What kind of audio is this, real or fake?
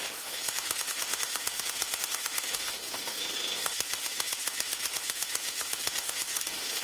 fake